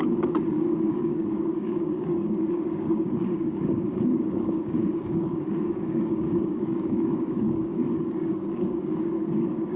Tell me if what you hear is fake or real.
fake